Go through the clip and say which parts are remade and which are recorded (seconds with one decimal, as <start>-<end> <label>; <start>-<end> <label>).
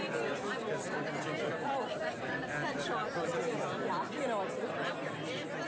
0.0-5.7 recorded